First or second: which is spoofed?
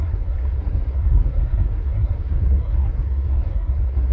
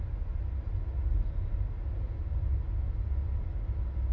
first